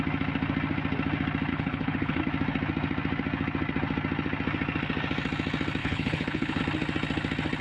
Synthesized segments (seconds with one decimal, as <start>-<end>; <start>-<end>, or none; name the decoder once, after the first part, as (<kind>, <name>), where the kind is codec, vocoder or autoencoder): 1.5-2.2 (codec, HILCodec); 5.8-6.6

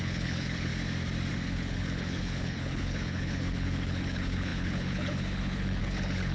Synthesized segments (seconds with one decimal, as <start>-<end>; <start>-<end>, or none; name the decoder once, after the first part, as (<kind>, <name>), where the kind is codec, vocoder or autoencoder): 0.0-0.7 (codec, HILCodec); 1.3-6.3

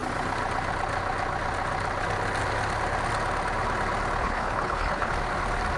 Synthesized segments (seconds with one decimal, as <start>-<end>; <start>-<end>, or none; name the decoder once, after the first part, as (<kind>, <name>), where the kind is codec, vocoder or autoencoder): 4.2-5.1 (codec, HILCodec)

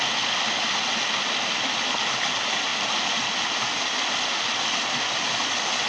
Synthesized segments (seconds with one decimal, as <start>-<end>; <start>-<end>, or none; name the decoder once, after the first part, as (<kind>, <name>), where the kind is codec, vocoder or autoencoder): none

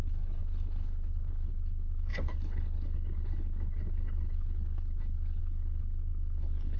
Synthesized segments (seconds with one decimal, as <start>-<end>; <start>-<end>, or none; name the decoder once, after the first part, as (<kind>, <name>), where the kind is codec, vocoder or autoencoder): 0.0-6.8 (codec, HILCodec)

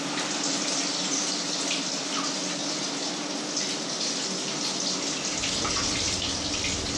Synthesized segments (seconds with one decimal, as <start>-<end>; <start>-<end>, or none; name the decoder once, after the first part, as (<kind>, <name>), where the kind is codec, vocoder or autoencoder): none

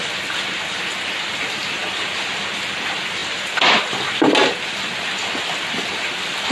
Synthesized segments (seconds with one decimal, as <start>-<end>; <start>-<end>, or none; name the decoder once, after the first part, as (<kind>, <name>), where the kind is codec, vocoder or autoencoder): none